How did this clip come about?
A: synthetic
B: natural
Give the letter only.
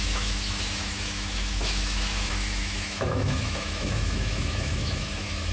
A